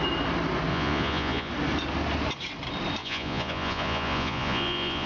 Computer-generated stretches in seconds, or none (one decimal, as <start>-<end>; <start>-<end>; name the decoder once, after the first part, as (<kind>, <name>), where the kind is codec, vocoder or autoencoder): 0.7-1.5 (vocoder, Vocos); 3.0-5.1